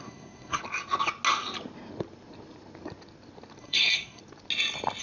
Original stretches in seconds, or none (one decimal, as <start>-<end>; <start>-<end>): 0.6-3.6; 4.2-5.0